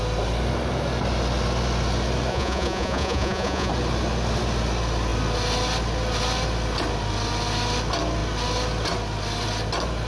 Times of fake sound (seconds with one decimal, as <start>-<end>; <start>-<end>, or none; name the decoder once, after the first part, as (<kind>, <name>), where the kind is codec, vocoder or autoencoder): 2.3-3.7 (vocoder, Vocos)